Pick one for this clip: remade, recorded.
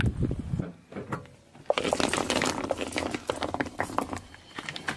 recorded